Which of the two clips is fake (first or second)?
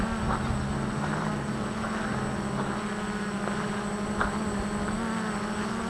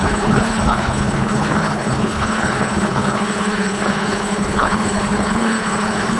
second